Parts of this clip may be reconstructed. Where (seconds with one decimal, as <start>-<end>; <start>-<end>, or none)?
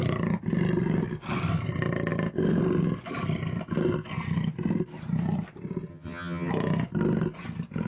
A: 5.9-6.5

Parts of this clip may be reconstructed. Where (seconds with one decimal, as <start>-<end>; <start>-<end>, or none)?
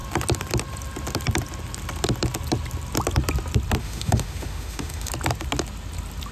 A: 3.8-5.1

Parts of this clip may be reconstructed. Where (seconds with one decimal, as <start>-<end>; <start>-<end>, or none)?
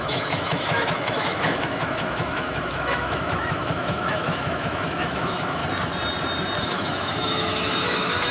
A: 0.0-5.6; 6.6-8.3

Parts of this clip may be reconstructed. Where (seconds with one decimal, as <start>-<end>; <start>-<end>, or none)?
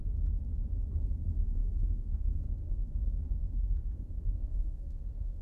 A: 1.1-5.4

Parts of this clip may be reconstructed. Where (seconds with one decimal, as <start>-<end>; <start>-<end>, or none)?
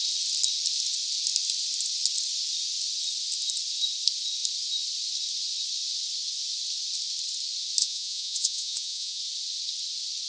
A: 7.8-9.2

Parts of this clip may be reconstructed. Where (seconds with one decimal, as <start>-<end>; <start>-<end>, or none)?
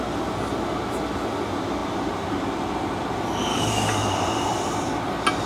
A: 3.5-4.1